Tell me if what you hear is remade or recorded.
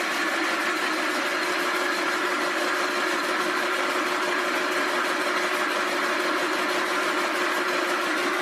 recorded